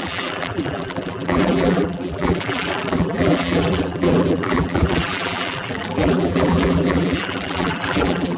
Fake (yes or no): yes